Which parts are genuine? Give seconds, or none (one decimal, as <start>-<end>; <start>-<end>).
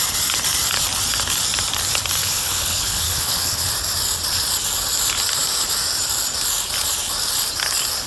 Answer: 0.0-2.2; 3.7-8.1